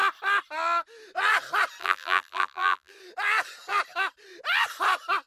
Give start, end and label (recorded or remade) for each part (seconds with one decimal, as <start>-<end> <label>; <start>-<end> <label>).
0.0-1.8 recorded; 1.8-2.9 remade; 2.9-5.3 recorded

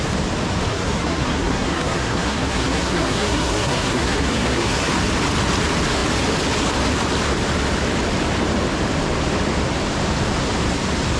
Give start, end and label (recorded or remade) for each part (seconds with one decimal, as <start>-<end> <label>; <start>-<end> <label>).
0.0-0.7 recorded; 0.7-4.9 remade; 4.9-11.2 recorded